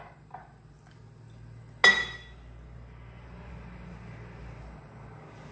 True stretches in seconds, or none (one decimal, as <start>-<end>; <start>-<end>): 0.0-5.5